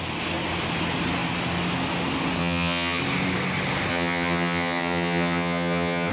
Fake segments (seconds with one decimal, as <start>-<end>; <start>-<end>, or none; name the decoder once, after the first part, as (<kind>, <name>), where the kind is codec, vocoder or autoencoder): 2.4-3.0 (vocoder, HiFi-GAN); 3.9-6.1